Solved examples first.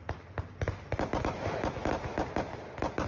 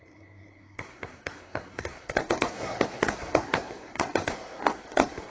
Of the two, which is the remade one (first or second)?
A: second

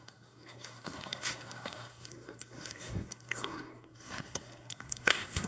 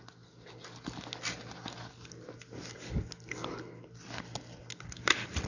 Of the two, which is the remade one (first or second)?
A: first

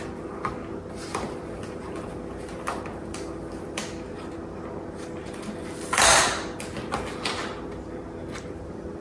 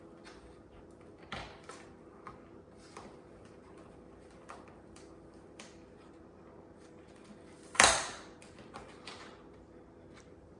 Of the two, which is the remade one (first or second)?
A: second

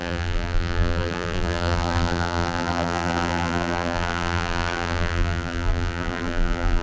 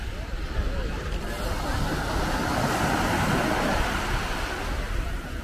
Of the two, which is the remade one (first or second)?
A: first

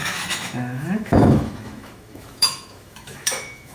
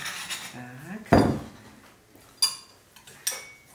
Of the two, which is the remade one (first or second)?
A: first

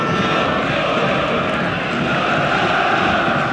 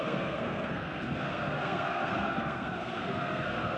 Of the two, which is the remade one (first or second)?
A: second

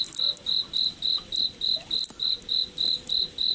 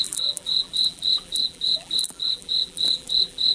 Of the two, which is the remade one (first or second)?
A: second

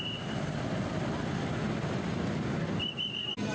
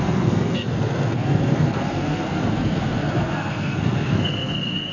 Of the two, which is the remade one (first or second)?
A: second